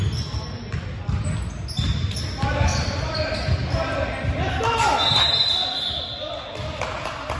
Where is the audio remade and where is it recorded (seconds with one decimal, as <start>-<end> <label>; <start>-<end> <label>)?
0.0-7.4 recorded